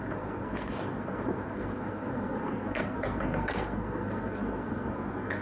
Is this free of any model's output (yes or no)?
no